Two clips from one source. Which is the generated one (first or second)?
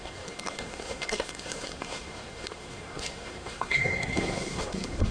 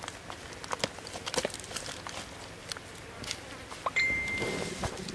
first